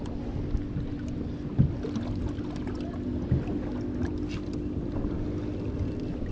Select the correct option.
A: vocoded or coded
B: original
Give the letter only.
B